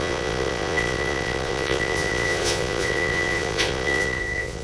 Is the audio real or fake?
fake